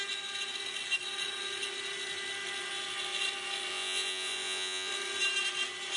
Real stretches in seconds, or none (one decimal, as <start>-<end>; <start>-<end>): 0.0-3.7; 4.9-6.0